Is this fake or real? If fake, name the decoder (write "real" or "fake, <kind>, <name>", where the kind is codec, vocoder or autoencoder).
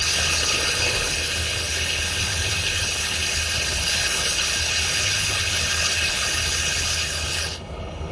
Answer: fake, codec, HILCodec